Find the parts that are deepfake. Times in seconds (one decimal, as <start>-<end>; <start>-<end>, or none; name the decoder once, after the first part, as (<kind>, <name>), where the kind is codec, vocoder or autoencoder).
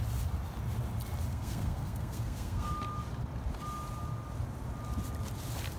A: 1.3-2.7 (codec, SNAC)